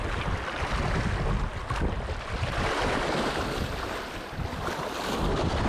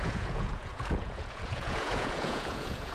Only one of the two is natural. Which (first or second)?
first